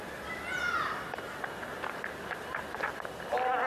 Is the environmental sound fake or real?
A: real